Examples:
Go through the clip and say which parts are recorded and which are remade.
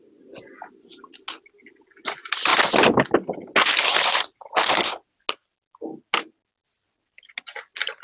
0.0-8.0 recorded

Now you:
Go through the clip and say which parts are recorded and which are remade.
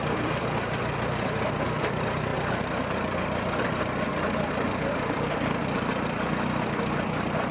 0.0-7.5 remade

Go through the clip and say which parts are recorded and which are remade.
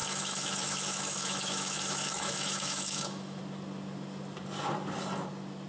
0.0-3.4 remade; 3.4-5.7 recorded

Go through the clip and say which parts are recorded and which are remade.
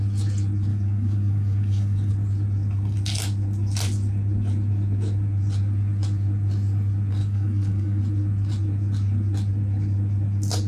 0.0-0.7 recorded; 0.7-2.1 remade; 2.1-7.2 recorded; 7.2-8.0 remade; 8.0-10.7 recorded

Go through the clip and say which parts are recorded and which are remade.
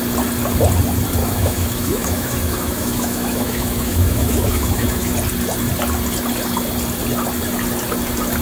0.0-1.2 recorded; 1.2-5.1 remade; 5.1-8.4 recorded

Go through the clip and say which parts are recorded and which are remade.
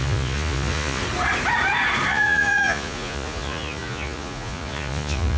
0.0-1.0 remade; 1.0-2.1 recorded; 2.1-5.4 remade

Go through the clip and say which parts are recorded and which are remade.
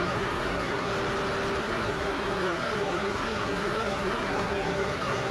0.0-0.9 remade; 0.9-1.6 recorded; 1.6-5.3 remade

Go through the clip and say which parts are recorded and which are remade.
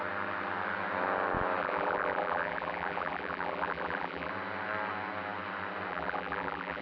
0.0-1.6 recorded; 1.6-4.3 remade; 4.3-5.9 recorded; 5.9-6.8 remade